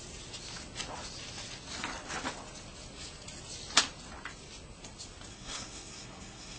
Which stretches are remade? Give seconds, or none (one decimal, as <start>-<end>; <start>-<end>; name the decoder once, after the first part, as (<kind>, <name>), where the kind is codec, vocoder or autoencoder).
5.3-6.6 (codec, SNAC)